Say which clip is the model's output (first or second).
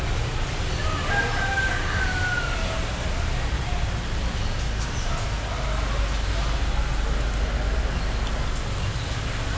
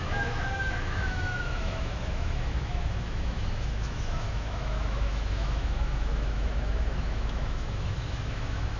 second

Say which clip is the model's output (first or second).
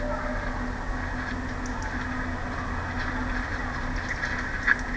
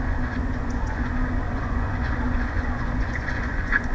second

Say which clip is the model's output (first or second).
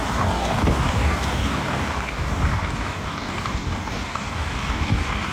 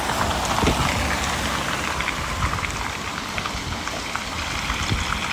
first